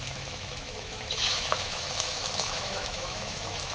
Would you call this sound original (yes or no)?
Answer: no